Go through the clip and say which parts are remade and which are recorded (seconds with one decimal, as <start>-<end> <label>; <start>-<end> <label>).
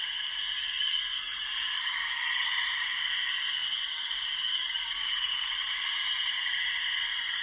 0.0-0.6 recorded; 0.6-2.5 remade; 2.5-3.5 recorded; 3.5-5.5 remade; 5.5-7.4 recorded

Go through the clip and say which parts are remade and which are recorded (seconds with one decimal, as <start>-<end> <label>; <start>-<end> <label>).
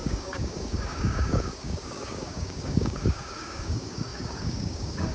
0.0-5.1 remade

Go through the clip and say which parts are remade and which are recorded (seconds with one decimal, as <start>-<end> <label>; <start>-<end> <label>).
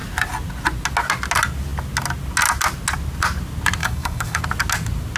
0.0-3.8 recorded; 3.8-4.4 remade; 4.4-5.2 recorded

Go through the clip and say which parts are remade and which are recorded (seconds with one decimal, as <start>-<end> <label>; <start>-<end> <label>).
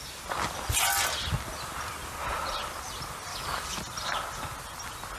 0.0-3.3 recorded; 3.3-3.8 remade; 3.8-5.2 recorded